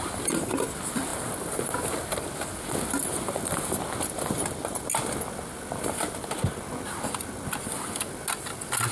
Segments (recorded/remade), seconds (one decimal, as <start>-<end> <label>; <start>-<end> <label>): 0.0-1.1 recorded; 1.1-1.9 remade; 1.9-8.9 recorded